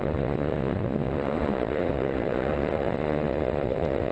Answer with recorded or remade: remade